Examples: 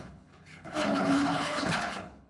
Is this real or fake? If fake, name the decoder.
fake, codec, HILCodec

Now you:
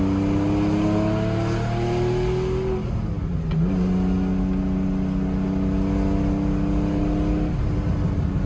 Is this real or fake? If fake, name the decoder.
real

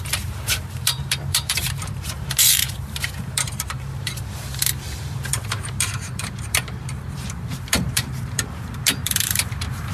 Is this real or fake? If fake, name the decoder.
fake, vocoder, BigVGAN v2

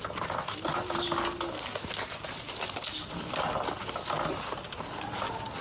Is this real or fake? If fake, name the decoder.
real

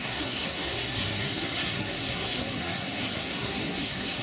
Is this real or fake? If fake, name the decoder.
fake, codec, SNAC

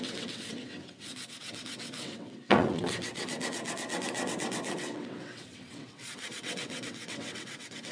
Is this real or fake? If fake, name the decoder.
fake, vocoder, WaveNeXt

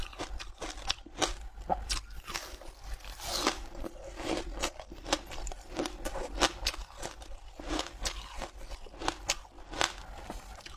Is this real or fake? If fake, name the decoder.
real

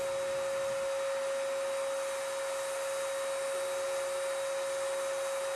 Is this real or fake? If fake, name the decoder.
real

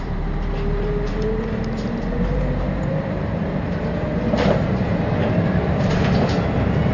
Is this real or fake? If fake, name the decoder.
fake, vocoder, BigVGAN v2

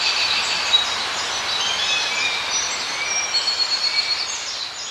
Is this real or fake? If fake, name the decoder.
real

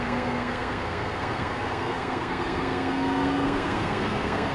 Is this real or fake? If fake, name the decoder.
fake, codec, SNAC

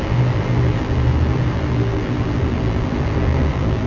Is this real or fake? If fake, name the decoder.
fake, vocoder, BigVGAN v2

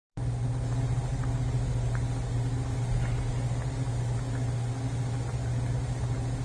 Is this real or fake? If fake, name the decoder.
real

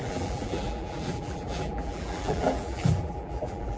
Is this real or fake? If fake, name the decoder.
fake, vocoder, BigVGAN v2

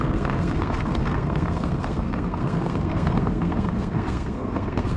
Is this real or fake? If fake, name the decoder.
fake, codec, SNAC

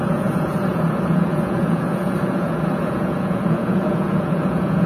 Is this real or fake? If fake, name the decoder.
fake, vocoder, Vocos